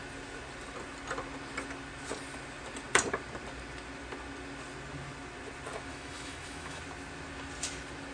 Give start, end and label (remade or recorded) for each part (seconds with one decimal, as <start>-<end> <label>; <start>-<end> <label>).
0.0-5.9 recorded; 5.9-6.8 remade; 6.8-8.1 recorded